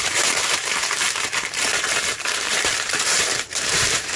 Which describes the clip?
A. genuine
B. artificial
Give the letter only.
B